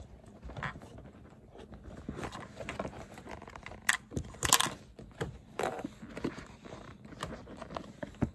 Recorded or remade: recorded